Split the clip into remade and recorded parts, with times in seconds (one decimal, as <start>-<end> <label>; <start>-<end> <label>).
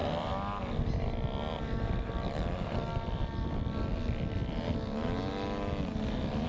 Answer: 0.0-6.5 recorded